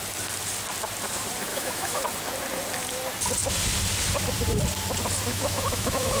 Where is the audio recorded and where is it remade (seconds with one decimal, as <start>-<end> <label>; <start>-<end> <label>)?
0.0-1.5 recorded; 1.5-2.0 remade; 2.0-5.3 recorded; 5.3-6.2 remade